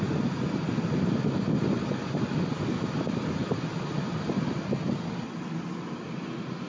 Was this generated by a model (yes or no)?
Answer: no